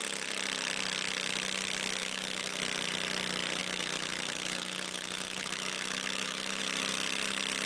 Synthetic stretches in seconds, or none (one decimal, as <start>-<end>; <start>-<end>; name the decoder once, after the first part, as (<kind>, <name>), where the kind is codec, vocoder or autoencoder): 2.0-2.6 (autoencoder, DAC-VAE); 3.6-6.6